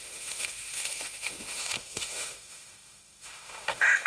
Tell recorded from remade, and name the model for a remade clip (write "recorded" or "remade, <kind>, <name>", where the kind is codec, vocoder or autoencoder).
remade, autoencoder, DAC-VAE